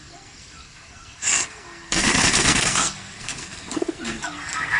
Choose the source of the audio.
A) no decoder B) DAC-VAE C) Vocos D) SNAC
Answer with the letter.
D